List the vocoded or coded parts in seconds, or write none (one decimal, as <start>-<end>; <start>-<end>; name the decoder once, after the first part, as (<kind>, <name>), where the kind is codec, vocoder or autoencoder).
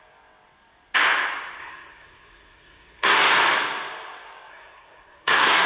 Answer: 1.6-3.3 (codec, SNAC); 4.5-5.7